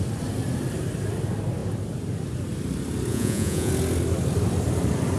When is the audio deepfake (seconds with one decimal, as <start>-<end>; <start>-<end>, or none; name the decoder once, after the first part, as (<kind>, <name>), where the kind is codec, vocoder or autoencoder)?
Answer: 3.1-3.7 (vocoder, Vocos)